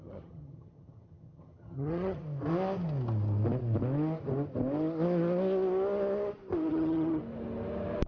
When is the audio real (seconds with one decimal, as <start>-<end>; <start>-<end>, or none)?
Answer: 2.2-6.7; 7.2-8.1